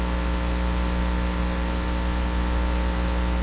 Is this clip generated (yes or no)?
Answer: no